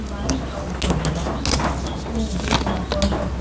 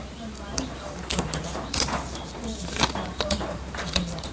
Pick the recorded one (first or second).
first